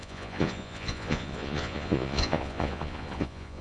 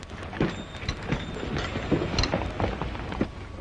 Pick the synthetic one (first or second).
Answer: first